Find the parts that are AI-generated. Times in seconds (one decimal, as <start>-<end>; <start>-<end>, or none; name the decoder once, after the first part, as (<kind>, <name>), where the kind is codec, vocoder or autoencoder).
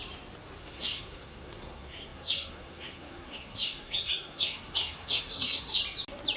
0.6-5.8 (codec, SNAC)